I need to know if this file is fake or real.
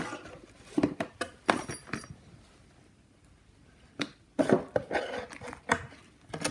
real